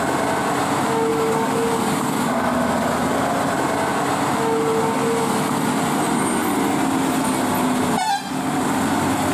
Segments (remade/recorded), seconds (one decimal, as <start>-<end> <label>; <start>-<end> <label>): 0.0-1.1 recorded; 1.1-2.6 remade; 2.6-9.3 recorded